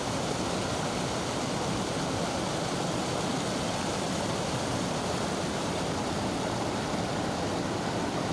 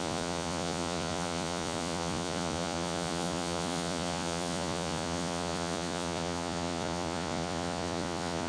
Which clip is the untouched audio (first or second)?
first